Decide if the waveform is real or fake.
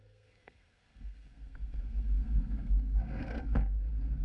fake